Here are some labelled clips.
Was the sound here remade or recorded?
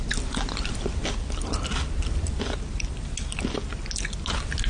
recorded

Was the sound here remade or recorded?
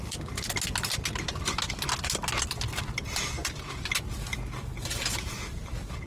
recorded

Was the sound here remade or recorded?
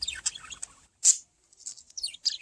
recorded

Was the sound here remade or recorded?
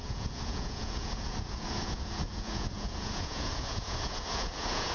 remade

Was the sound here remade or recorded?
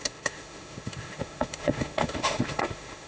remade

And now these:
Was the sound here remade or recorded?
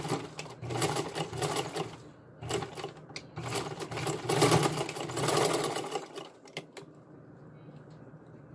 recorded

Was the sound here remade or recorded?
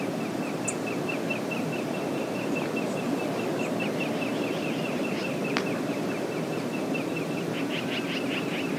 recorded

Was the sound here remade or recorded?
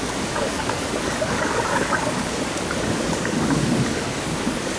remade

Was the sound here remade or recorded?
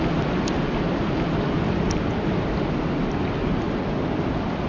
recorded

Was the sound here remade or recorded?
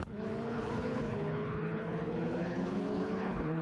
remade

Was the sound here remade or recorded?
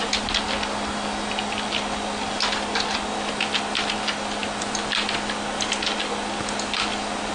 recorded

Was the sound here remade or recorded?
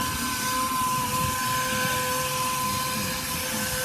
recorded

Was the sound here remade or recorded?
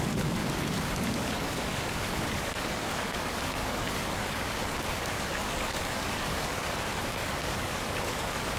remade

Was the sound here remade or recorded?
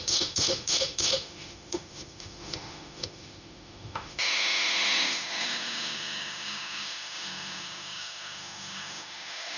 remade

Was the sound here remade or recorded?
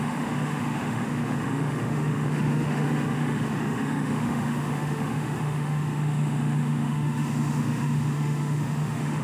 remade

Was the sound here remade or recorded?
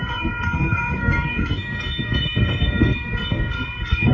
remade